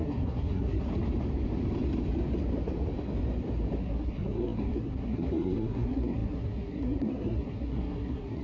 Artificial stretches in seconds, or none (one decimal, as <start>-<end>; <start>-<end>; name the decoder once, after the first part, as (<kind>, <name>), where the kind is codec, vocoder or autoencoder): 0.0-0.9 (codec, SNAC); 3.8-8.4